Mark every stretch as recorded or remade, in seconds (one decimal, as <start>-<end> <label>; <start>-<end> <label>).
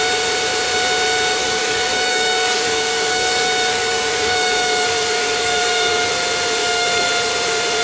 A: 0.0-1.4 recorded; 1.4-6.1 remade; 6.1-6.6 recorded; 6.6-7.1 remade; 7.1-7.8 recorded